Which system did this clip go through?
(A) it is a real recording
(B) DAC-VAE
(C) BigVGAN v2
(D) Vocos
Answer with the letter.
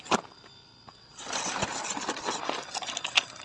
A